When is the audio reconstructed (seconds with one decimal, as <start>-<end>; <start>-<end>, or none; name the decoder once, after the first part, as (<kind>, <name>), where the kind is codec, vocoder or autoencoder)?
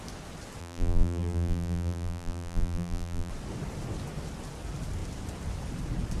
0.6-3.3 (vocoder, BigVGAN v2)